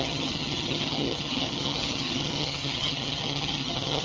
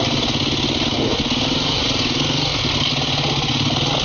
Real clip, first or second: second